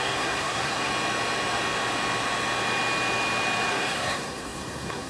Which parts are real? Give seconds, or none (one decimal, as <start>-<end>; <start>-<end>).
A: 0.9-3.7